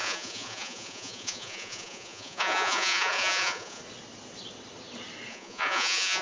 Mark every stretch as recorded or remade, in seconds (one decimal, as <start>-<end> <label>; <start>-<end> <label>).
0.0-3.8 remade; 3.8-5.3 recorded; 5.3-6.2 remade